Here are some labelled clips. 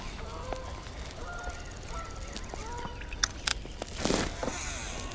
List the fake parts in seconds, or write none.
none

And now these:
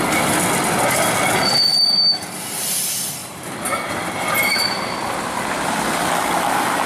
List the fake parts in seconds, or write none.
none